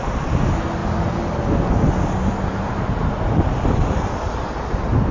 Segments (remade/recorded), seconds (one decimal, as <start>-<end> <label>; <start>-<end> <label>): 0.0-5.1 recorded